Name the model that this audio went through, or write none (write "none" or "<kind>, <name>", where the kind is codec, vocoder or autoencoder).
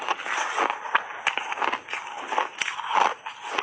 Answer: none